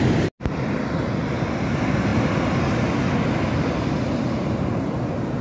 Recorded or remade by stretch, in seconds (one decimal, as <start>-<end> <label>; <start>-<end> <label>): 0.0-5.4 recorded